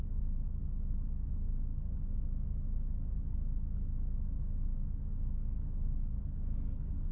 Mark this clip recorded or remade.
recorded